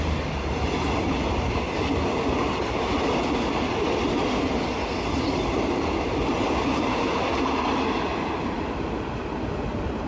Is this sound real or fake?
real